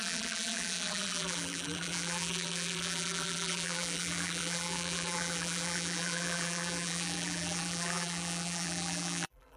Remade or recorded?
remade